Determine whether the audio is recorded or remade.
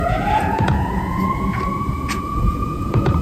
remade